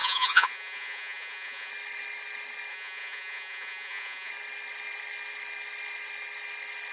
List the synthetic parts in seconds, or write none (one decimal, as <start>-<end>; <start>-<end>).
0.0-1.7; 2.7-4.3